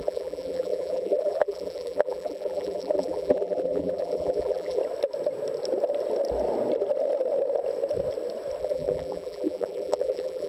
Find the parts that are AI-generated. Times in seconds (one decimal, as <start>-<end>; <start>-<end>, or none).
0.0-4.8; 8.6-10.5